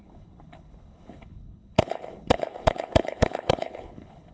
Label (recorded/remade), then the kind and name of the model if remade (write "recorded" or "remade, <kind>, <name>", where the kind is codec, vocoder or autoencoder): remade, codec, HILCodec